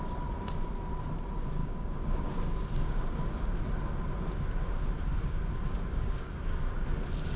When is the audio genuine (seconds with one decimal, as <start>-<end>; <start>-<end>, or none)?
0.0-1.6; 3.3-5.9; 6.6-7.4